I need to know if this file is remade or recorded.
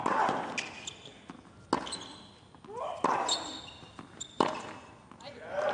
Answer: recorded